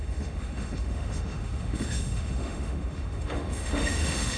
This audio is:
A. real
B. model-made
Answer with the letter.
B